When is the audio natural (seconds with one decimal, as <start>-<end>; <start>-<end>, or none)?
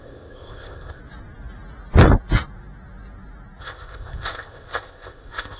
1.0-3.6